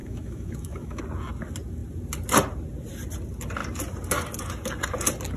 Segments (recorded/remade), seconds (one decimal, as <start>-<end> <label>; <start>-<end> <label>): 0.0-1.0 remade; 1.0-5.4 recorded